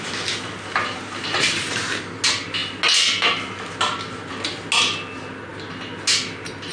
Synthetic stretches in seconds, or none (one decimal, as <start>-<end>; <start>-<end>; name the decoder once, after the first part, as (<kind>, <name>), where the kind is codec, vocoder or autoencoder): none